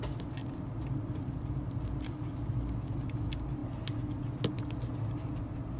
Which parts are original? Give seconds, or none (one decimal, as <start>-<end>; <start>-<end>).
0.0-5.8